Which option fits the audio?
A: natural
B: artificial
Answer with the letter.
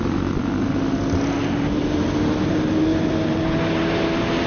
A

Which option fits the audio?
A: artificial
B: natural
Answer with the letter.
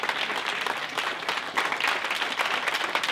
B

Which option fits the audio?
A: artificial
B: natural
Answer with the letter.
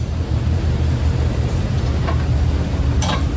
A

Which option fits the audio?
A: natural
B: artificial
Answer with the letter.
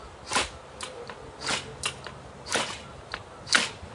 A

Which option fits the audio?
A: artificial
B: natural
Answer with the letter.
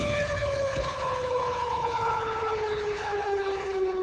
A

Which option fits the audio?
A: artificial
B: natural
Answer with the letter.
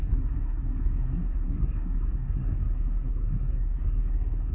A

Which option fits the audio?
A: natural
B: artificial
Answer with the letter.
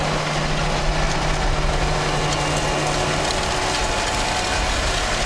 A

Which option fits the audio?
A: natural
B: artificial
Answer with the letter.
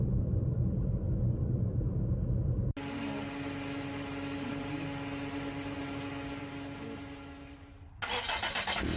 A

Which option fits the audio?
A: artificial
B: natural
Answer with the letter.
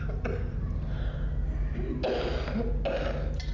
B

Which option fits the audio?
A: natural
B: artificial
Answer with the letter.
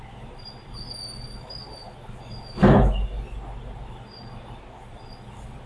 A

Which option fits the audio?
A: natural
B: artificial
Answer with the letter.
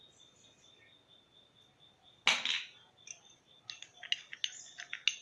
A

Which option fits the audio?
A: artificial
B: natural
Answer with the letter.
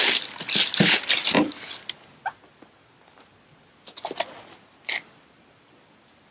B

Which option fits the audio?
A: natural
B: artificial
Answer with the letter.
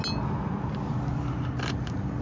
A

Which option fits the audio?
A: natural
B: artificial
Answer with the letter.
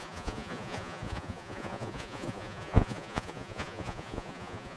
B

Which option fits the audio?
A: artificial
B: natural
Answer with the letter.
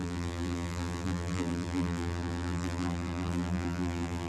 A